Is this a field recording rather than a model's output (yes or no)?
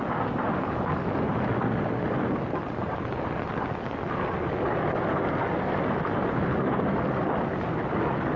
yes